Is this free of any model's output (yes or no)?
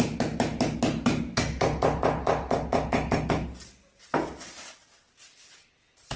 yes